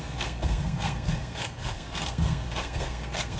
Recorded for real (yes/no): no